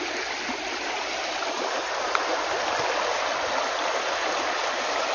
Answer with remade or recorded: recorded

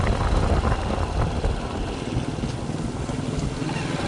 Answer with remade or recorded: recorded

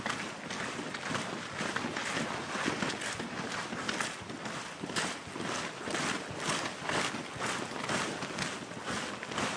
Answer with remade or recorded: recorded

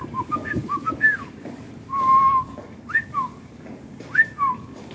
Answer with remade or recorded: remade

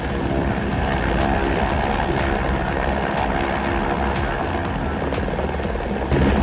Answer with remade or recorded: recorded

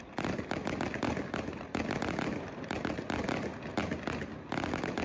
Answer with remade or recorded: recorded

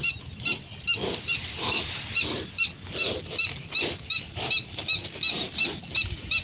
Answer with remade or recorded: recorded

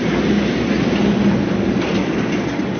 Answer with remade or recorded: recorded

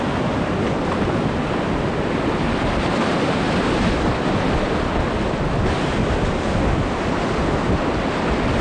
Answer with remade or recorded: recorded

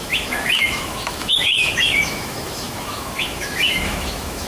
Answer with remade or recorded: remade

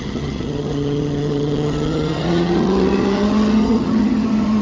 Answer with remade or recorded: remade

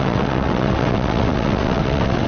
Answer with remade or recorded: remade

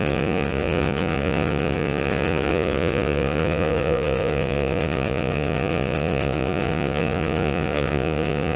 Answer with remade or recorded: remade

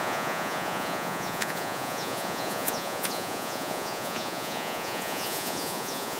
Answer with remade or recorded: remade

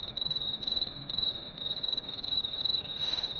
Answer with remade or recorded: remade